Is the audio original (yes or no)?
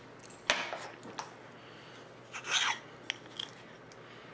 yes